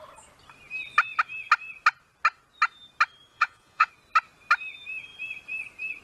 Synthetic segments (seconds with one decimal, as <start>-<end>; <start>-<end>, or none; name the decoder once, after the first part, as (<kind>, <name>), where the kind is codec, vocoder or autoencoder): 3.3-3.9 (vocoder, Vocos)